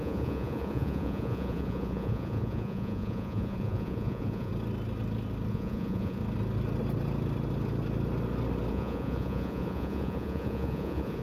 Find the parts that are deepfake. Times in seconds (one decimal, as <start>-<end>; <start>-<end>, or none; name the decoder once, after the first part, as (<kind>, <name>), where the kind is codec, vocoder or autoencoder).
0.0-4.5 (vocoder, Vocos); 5.5-6.2; 8.7-11.2